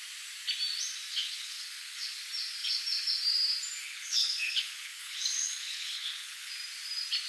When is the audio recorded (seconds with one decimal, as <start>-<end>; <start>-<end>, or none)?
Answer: 0.0-1.1; 2.1-3.8; 6.5-7.3